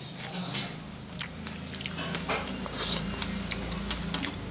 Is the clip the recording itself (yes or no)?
yes